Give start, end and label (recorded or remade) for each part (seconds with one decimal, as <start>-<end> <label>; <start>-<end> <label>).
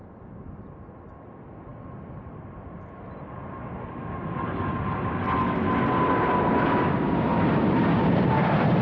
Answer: 0.0-7.3 recorded; 7.3-7.8 remade; 7.8-8.8 recorded